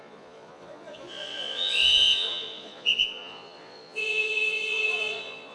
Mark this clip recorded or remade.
remade